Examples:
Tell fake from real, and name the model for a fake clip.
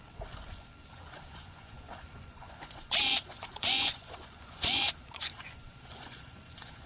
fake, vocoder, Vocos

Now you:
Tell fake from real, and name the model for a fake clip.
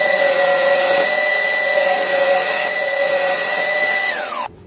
fake, vocoder, WaveNeXt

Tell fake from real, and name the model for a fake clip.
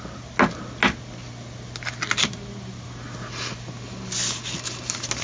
real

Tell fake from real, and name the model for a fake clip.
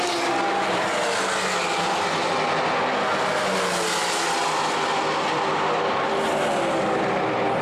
real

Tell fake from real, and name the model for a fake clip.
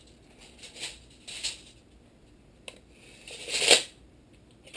real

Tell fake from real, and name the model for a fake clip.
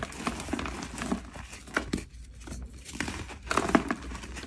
real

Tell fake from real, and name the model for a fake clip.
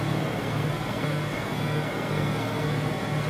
fake, codec, SNAC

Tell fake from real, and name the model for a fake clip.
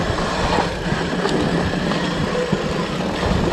real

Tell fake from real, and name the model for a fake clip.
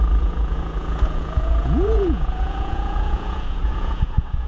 fake, vocoder, Vocos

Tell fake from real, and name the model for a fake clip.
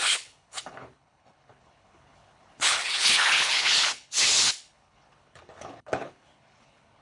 fake, codec, HILCodec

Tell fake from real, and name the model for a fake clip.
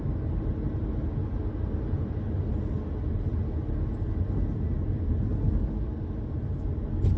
real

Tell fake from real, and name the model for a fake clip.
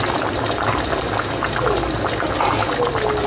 real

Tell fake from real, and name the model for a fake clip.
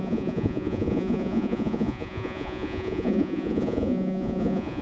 fake, vocoder, Vocos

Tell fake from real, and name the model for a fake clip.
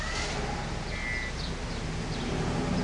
real